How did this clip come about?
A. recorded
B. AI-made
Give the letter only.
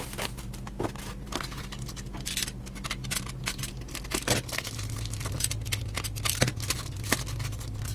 A